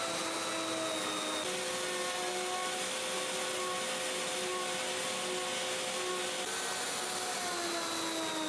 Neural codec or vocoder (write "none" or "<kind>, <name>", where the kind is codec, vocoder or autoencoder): none